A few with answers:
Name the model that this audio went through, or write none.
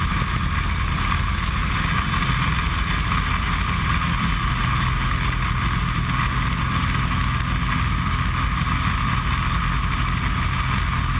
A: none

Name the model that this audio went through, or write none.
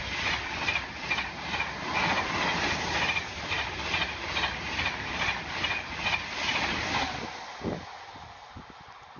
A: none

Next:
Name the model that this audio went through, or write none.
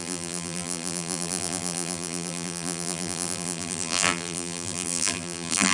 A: vocoder, BigVGAN v2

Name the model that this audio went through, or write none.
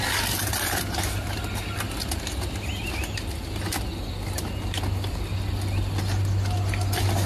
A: none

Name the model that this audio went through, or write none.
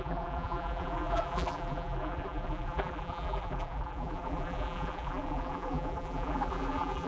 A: vocoder, BigVGAN v2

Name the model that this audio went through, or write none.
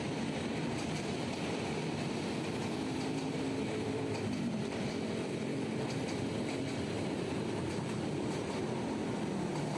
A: vocoder, BigVGAN v2